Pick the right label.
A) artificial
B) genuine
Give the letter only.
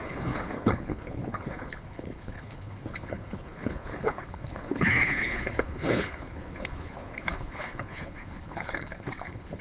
A